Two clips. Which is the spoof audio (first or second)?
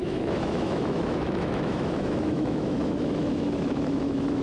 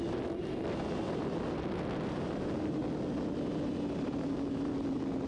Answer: first